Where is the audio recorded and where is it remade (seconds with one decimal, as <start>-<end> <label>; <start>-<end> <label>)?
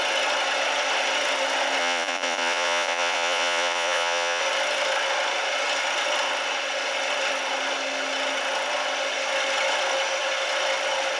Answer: 0.0-1.8 recorded; 1.8-4.4 remade; 4.4-11.2 recorded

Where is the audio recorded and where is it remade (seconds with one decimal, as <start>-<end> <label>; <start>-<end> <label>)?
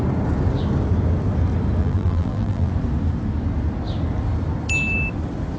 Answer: 0.0-1.8 recorded; 1.8-2.7 remade; 2.7-5.6 recorded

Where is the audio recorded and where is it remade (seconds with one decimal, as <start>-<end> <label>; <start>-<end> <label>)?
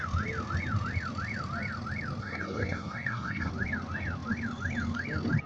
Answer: 0.0-2.2 recorded; 2.2-3.5 remade; 3.5-5.5 recorded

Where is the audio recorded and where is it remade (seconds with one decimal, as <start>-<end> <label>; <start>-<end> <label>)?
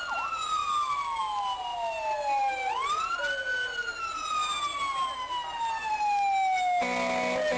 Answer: 0.0-7.6 recorded